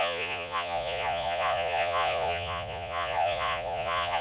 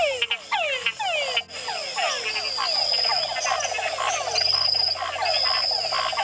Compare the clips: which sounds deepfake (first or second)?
first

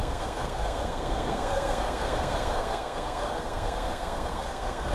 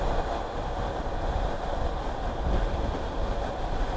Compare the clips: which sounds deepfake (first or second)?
first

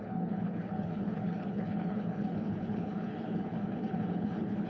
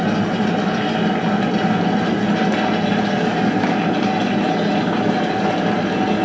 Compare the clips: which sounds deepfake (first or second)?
first